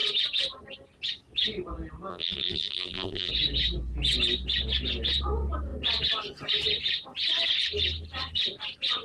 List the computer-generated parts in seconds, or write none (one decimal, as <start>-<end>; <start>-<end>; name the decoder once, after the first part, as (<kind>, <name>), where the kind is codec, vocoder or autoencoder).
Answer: 2.1-3.3 (vocoder, BigVGAN v2)